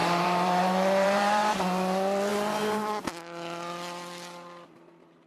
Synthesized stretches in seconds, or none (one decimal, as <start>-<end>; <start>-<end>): 0.0-1.5